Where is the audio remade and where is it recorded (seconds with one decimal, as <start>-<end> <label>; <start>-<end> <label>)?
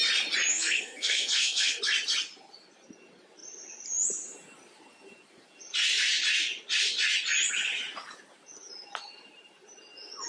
0.0-0.5 recorded; 0.5-1.8 remade; 1.8-10.3 recorded